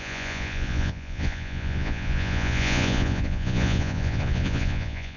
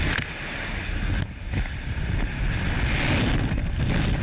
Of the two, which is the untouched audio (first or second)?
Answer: second